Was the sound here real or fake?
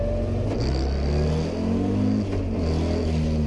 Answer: real